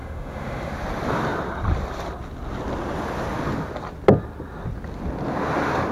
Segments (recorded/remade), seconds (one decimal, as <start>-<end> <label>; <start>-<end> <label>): 0.0-0.7 remade; 0.7-5.9 recorded